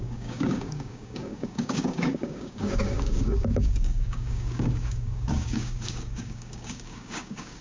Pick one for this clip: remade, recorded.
remade